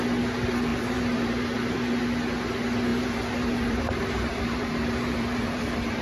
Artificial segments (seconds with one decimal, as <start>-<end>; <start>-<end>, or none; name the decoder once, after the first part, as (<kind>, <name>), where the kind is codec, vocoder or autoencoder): 0.7-2.0 (vocoder, BigVGAN v2); 2.9-6.0